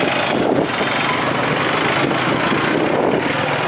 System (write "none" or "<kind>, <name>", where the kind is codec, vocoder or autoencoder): none